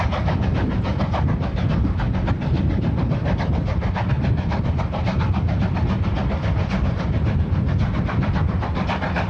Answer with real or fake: real